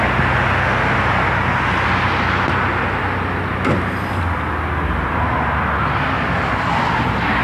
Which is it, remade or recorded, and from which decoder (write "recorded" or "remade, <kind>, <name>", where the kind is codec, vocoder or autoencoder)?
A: recorded